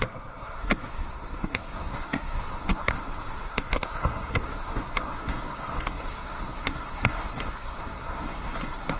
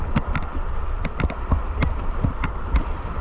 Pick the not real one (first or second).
first